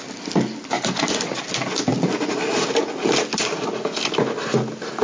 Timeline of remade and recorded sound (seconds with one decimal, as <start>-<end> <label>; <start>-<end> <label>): 0.0-5.0 recorded